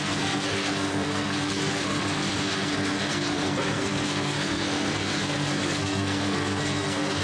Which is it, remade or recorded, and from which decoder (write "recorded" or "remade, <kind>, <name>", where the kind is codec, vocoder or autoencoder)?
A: remade, codec, SNAC